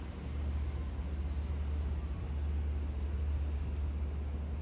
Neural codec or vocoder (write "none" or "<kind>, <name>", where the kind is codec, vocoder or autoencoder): none